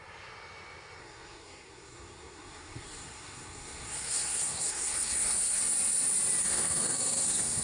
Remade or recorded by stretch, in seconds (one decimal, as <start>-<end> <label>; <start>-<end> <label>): 0.0-1.0 recorded; 1.0-5.6 remade; 5.6-6.4 recorded; 6.4-7.6 remade